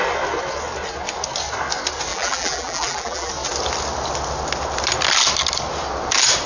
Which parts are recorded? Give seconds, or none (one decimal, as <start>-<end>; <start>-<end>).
0.0-2.1; 3.3-6.5

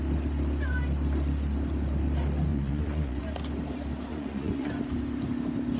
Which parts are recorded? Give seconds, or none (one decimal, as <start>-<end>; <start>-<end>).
0.0-2.5; 3.2-4.1; 4.7-5.8

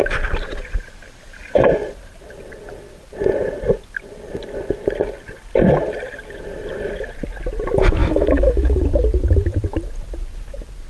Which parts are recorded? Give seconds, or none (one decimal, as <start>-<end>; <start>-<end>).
0.0-8.0; 8.8-10.9